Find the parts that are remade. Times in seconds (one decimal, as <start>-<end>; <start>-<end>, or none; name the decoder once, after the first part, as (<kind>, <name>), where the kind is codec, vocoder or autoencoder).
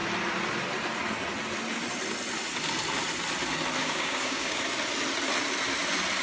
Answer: 3.8-4.6 (codec, DAC)